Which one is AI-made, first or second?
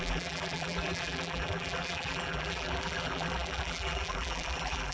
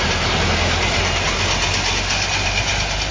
first